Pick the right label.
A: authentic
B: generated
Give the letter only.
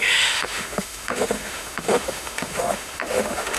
B